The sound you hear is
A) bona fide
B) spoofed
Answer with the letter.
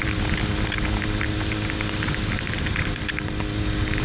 A